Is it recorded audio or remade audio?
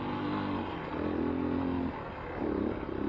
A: recorded